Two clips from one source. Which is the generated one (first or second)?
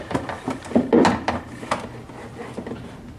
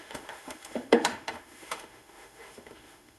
second